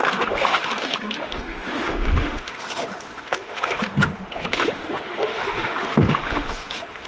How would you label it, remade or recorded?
remade